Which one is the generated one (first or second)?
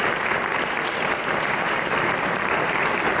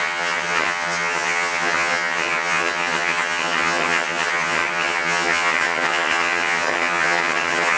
second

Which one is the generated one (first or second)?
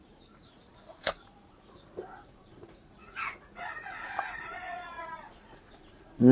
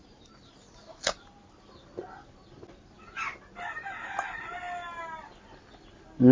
first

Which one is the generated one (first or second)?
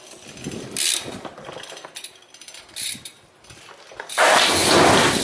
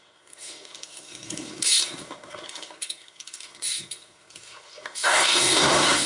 second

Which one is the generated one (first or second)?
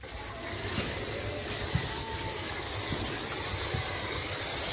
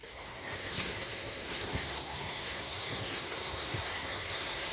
second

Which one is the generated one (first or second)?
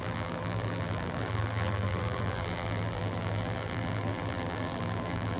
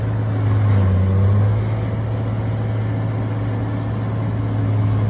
first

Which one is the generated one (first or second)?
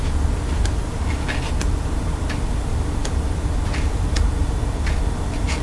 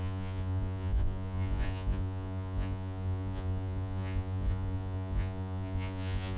second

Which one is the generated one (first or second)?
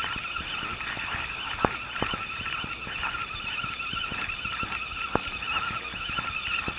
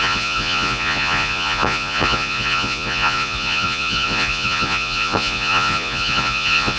second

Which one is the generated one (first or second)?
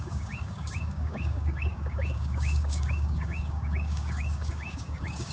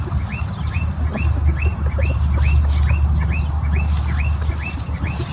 first